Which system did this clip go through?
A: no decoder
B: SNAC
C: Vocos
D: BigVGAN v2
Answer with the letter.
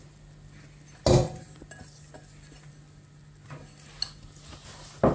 A